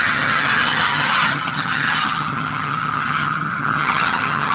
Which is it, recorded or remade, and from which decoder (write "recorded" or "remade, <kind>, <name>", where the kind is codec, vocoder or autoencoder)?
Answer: remade, vocoder, HiFi-GAN